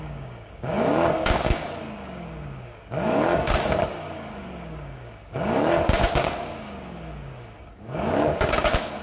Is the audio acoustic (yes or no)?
no